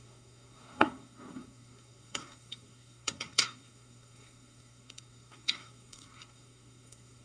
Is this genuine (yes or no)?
no